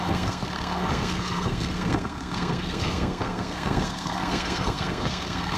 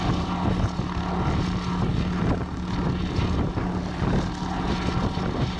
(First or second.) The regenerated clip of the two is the first